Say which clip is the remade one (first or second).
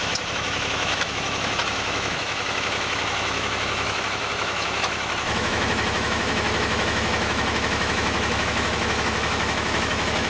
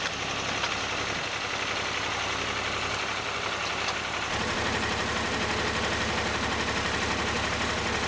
first